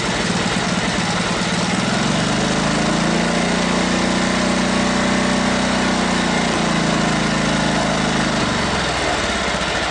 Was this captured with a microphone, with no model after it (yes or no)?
yes